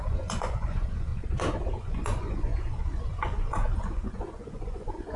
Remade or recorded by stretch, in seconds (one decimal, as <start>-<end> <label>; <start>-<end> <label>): 0.0-1.1 remade; 1.1-1.8 recorded; 1.8-5.2 remade